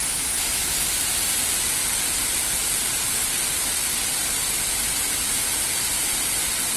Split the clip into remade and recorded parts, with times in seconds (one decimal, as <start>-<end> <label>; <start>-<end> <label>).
0.0-6.8 recorded